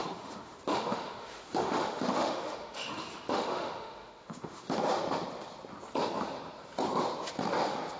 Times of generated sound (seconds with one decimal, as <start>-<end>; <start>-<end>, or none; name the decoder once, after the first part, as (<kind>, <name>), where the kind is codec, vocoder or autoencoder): 0.0-4.8 (autoencoder, DAC-VAE)